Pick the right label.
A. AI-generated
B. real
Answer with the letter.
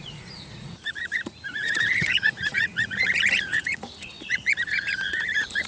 A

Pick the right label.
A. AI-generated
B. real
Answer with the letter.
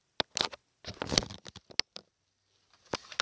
B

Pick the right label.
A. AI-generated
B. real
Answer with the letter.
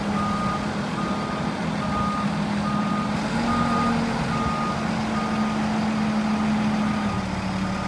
B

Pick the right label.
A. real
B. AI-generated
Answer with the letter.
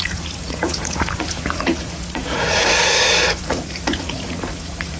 B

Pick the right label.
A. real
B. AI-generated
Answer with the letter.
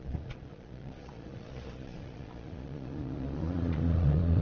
B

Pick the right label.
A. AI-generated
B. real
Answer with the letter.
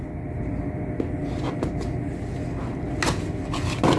B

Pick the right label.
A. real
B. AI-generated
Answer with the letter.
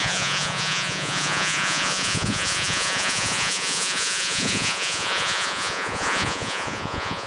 B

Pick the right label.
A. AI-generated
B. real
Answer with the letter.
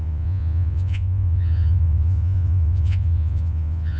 A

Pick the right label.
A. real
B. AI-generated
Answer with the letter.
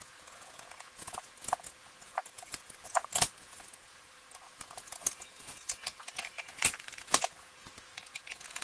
B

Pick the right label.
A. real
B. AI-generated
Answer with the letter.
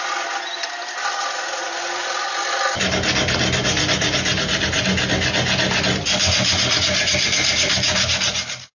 A